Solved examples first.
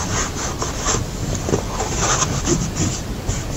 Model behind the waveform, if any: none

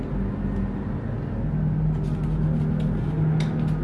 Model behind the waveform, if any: none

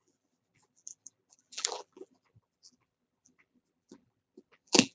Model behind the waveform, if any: vocoder, BigVGAN v2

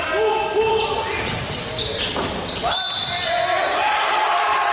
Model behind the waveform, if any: none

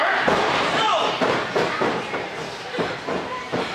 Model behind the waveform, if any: none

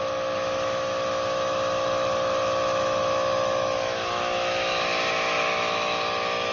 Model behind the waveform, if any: autoencoder, DAC-VAE